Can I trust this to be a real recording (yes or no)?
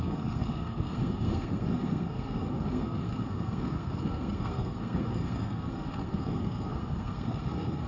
no